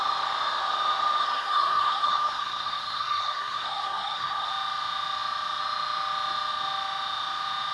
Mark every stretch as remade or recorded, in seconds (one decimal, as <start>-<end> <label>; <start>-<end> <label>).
0.0-1.2 recorded; 1.2-4.5 remade; 4.5-7.7 recorded